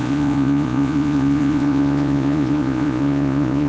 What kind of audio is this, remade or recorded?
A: remade